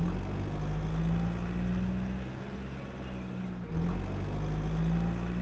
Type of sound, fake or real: real